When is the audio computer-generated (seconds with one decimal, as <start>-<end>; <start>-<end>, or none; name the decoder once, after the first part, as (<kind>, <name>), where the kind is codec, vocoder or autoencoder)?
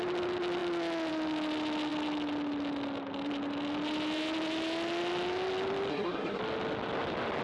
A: 5.9-6.4 (codec, SNAC)